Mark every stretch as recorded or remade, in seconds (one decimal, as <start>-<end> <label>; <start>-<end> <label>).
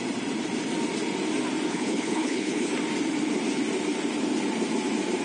0.0-1.7 recorded; 1.7-2.7 remade; 2.7-5.2 recorded